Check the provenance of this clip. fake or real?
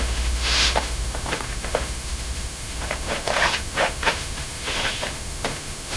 fake